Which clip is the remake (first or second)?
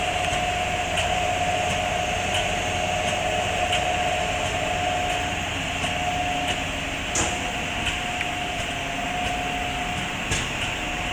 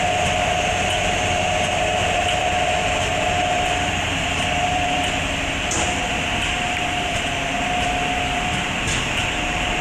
second